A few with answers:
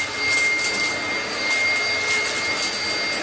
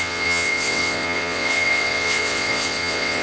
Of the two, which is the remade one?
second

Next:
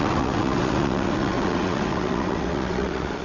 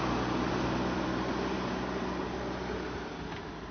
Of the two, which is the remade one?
first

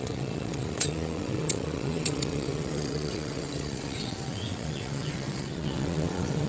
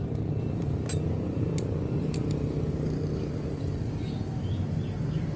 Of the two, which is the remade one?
first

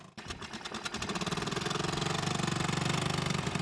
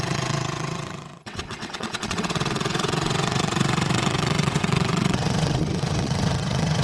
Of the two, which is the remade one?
second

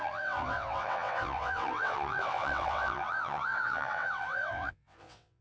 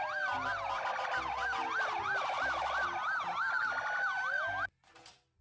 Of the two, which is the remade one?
first